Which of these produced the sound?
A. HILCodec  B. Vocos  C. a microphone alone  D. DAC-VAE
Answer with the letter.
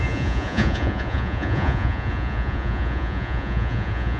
B